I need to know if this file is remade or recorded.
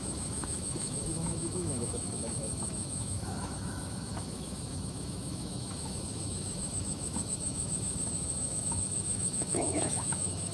remade